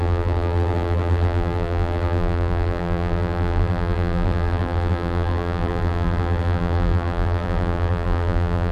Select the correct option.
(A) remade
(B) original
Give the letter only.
A